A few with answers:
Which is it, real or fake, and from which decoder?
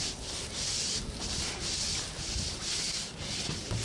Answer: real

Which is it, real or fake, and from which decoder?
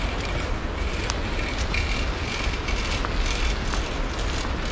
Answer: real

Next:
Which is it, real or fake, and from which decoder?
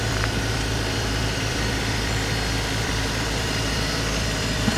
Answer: fake, vocoder, BigVGAN v2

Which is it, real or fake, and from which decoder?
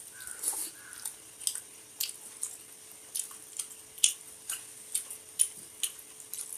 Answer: real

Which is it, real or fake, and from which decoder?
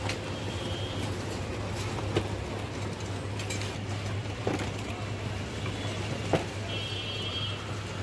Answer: real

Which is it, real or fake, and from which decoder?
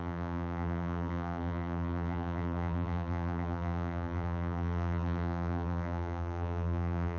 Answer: fake, vocoder, BigVGAN v2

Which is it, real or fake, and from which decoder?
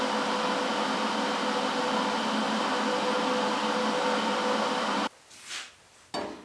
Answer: real